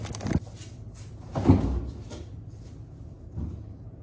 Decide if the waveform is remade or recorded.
recorded